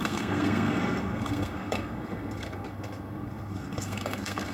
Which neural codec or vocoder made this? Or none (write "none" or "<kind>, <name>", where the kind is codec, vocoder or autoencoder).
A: codec, SNAC